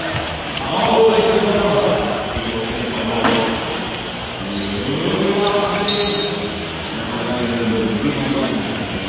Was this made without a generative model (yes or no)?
yes